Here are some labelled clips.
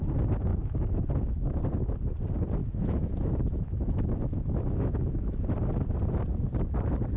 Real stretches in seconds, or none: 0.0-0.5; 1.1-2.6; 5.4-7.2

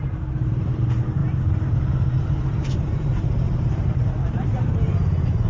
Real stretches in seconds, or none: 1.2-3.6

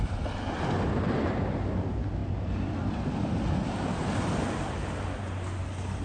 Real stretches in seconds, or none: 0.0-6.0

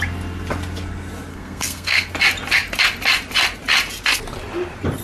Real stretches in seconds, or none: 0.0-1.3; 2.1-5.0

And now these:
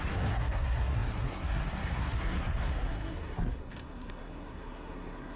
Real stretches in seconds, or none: none

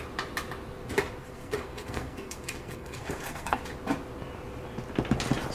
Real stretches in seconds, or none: 0.0-1.2; 3.6-5.5

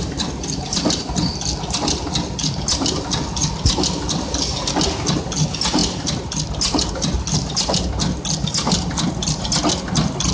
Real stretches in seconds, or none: 0.0-10.3

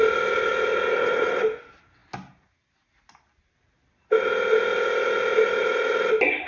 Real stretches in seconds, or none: 0.0-6.5